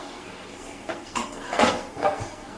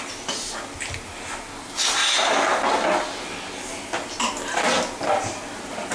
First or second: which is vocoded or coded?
first